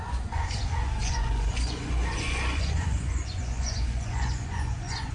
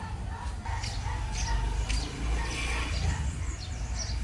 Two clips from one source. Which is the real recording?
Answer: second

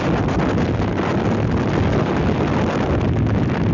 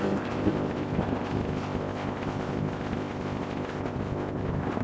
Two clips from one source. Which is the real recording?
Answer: first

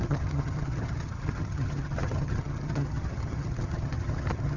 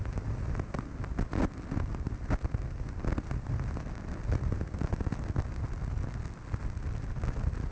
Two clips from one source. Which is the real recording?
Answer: second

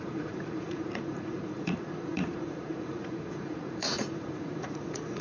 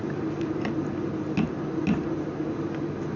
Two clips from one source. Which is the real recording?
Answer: second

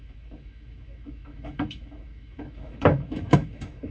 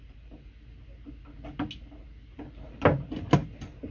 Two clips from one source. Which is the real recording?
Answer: second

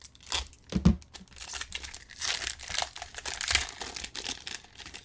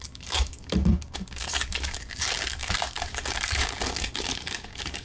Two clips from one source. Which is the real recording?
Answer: first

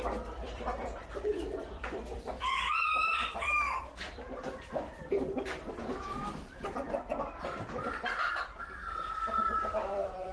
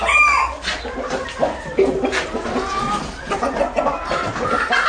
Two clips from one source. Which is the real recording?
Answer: second